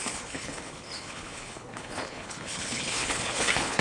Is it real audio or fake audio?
fake